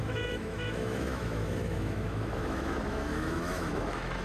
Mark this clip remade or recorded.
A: remade